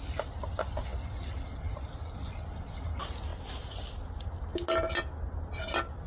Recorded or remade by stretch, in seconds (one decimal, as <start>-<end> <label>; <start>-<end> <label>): 0.0-6.1 recorded